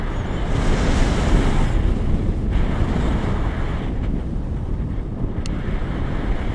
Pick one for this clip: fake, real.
real